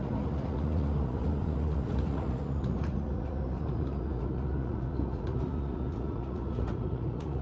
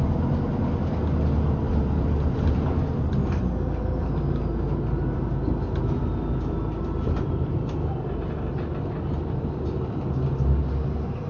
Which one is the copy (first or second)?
first